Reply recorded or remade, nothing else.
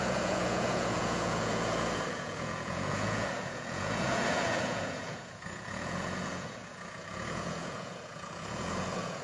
remade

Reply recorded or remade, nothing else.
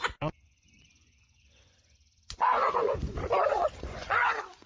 remade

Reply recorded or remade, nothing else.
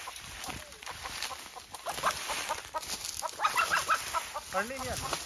recorded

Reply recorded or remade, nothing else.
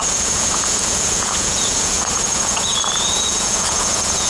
remade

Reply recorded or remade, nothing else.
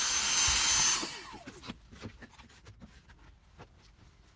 recorded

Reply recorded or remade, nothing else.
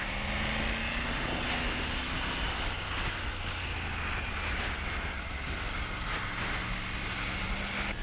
recorded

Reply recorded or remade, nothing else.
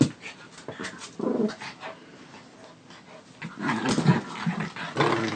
recorded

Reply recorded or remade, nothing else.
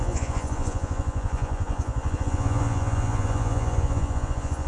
remade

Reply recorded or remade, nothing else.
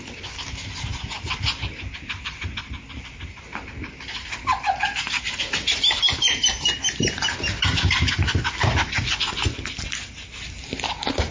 recorded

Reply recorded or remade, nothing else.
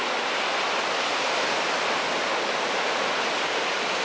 recorded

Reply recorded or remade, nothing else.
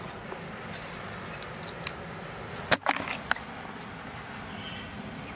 recorded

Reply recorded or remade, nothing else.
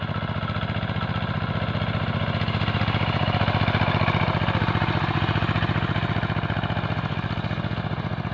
recorded